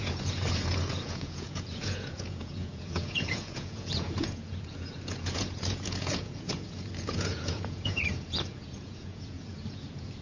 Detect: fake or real fake